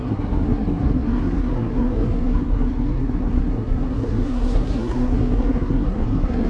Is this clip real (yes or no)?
no